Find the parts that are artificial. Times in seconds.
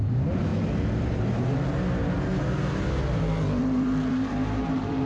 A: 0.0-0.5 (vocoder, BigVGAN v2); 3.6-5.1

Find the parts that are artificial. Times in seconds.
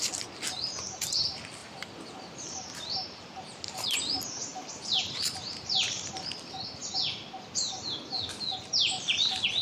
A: 1.6-3.6 (vocoder, BigVGAN v2); 4.5-6.1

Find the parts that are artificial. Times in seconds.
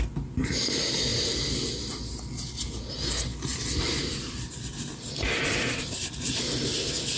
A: 3.5-6.3 (vocoder, BigVGAN v2)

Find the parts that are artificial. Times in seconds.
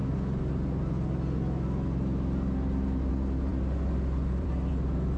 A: 3.5-4.7 (vocoder, BigVGAN v2)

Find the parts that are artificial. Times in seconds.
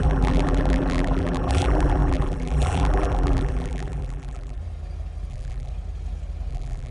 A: 0.0-4.6 (vocoder, BigVGAN v2); 5.3-5.7; 6.5-6.9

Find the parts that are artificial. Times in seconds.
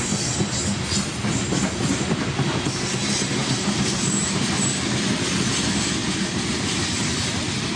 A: 3.4-4.4 (vocoder, BigVGAN v2); 6.0-7.1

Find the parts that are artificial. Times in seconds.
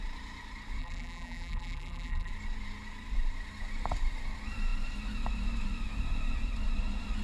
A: 0.8-2.3 (vocoder, BigVGAN v2)